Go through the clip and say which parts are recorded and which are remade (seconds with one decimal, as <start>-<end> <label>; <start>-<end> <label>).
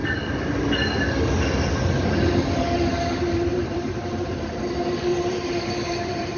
0.0-3.5 recorded; 3.5-4.6 remade; 4.6-5.1 recorded; 5.1-6.4 remade